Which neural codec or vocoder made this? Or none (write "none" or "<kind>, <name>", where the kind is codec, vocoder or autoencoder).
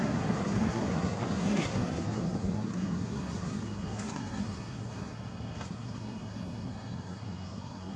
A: codec, SNAC